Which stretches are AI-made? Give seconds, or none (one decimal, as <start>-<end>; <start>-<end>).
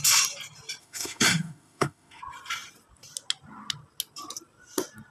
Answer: 0.8-2.2